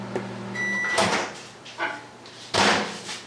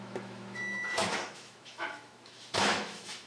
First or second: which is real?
first